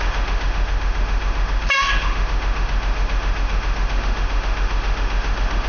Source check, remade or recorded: remade